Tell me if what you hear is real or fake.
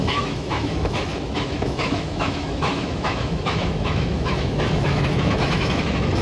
fake